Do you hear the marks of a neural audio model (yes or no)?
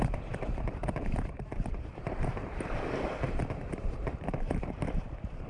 yes